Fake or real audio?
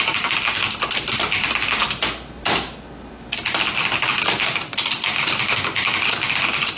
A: real